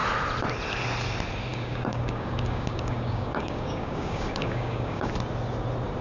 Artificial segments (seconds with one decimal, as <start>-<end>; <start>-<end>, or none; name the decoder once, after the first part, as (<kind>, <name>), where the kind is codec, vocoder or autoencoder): 1.5-5.1 (codec, DAC)

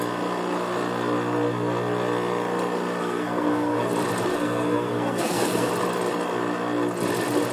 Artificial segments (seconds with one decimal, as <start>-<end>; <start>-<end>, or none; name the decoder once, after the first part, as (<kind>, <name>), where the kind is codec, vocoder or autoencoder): 3.0-3.9 (codec, SNAC); 4.3-5.7

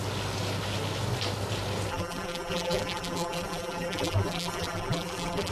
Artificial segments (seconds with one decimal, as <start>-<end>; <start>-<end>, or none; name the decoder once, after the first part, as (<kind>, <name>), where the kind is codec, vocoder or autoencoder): 1.9-5.5 (vocoder, BigVGAN v2)